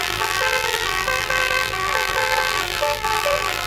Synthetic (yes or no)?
yes